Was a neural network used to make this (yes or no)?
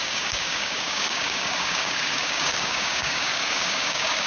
yes